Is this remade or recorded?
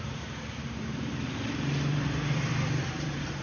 remade